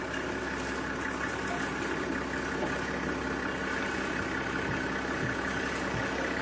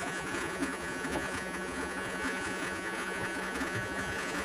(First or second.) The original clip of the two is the first